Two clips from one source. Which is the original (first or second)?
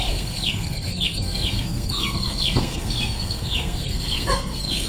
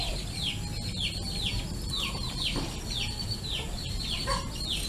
second